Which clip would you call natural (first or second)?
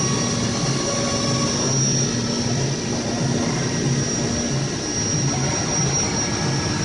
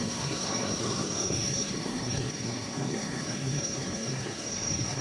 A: first